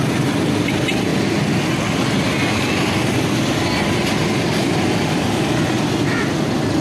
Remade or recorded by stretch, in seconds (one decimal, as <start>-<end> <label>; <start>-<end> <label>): 0.0-6.8 recorded